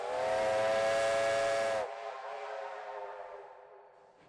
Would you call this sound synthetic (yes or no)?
yes